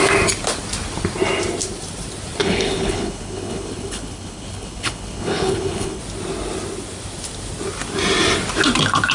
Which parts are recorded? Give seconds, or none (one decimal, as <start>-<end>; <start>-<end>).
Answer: 0.0-2.4; 6.0-9.1